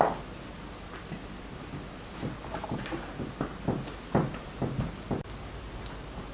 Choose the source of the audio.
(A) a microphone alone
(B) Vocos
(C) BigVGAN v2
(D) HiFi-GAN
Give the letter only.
A